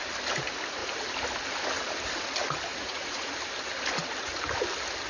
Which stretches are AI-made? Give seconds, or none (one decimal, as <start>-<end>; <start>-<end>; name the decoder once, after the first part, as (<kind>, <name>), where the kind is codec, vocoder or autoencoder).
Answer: 2.7-3.3 (vocoder, Vocos)